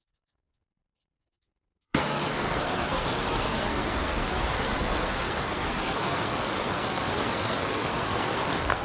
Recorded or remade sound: remade